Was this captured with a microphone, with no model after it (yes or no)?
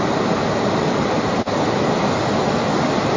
yes